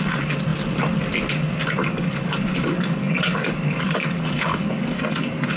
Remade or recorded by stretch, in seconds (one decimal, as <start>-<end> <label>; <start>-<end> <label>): 0.0-1.8 recorded; 1.8-5.6 remade